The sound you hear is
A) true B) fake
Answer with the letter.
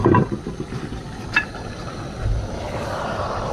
B